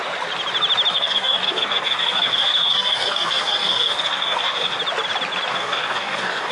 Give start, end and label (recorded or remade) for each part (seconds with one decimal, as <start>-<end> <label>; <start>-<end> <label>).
0.0-0.9 recorded; 0.9-4.8 remade; 4.8-5.5 recorded; 5.5-6.5 remade